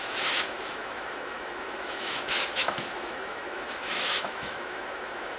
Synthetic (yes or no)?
yes